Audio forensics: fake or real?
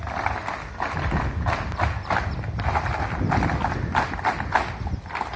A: real